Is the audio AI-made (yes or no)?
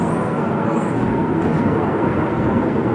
yes